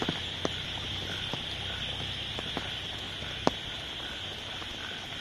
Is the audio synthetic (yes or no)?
no